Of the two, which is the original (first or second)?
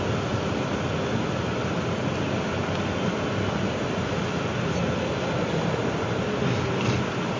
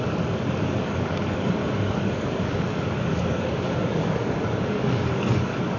first